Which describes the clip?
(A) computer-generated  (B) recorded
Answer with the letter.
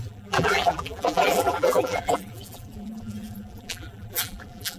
A